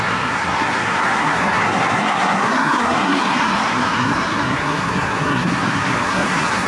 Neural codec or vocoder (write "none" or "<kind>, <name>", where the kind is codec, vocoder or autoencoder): codec, SNAC